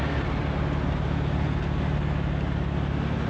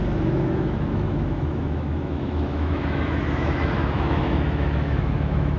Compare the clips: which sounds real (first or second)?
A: first